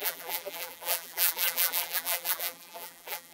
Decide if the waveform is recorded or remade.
remade